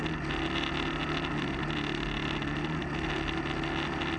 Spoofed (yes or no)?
no